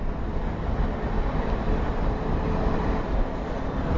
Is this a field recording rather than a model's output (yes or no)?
yes